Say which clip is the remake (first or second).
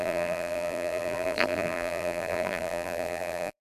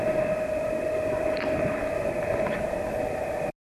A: first